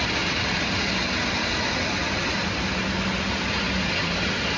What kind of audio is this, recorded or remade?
recorded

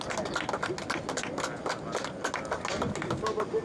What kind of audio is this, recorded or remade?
recorded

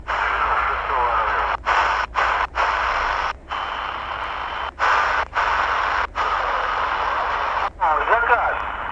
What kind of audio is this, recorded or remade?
recorded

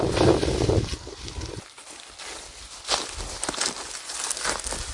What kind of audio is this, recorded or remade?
recorded